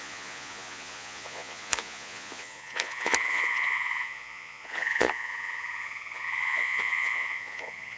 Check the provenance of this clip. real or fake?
fake